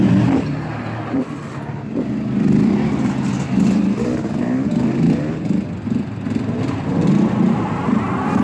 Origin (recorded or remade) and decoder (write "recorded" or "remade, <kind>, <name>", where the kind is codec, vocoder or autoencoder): recorded